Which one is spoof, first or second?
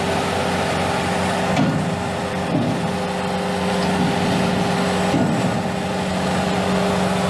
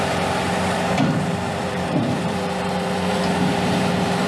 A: second